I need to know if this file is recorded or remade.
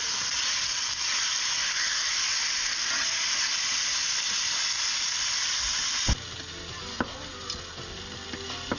recorded